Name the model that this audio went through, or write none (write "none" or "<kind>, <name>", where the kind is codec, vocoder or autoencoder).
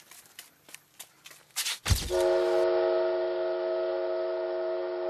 none